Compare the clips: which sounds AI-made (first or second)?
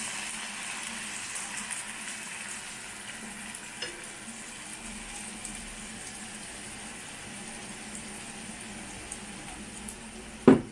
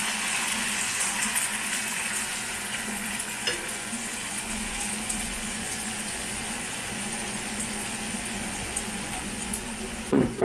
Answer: second